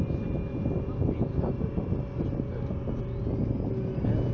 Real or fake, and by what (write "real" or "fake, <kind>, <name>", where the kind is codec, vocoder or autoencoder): real